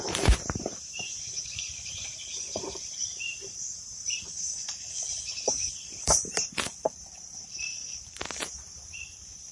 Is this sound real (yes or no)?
no